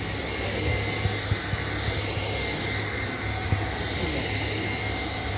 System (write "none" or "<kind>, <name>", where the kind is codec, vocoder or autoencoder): none